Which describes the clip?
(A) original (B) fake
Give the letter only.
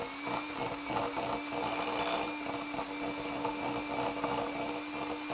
A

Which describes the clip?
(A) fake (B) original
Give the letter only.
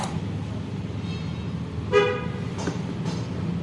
B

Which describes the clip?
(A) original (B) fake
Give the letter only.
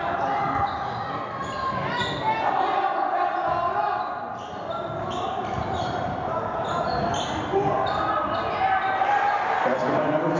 A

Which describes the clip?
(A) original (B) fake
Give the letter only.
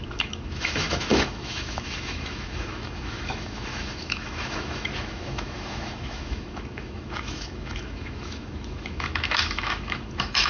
B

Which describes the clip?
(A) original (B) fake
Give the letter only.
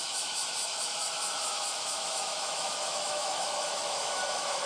B